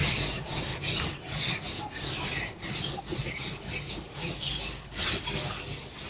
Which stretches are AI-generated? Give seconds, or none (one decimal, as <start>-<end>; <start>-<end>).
none